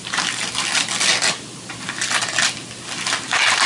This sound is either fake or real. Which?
real